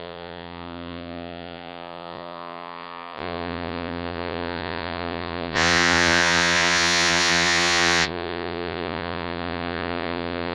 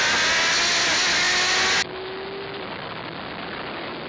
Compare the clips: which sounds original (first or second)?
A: second